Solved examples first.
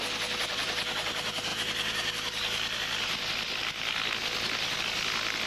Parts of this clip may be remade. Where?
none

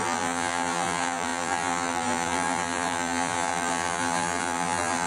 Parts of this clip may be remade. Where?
0.0-5.1 (vocoder, BigVGAN v2)

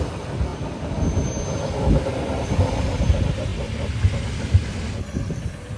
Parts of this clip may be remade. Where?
none

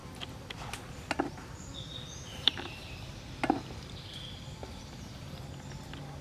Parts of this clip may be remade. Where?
2.3-2.9 (vocoder, BigVGAN v2); 4.6-5.4

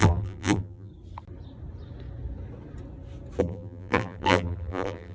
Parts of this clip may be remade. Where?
0.0-0.9 (vocoder, BigVGAN v2); 3.4-5.1

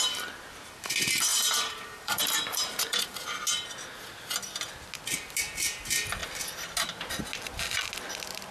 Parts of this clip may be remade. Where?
1.3-3.3 (vocoder, BigVGAN v2)

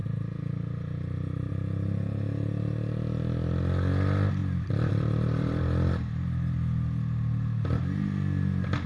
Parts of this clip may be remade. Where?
4.4-5.9 (vocoder, BigVGAN v2)